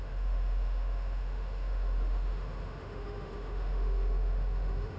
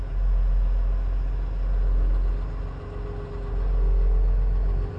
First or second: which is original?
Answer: second